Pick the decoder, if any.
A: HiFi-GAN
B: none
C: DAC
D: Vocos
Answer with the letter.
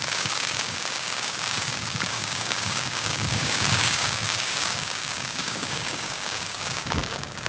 C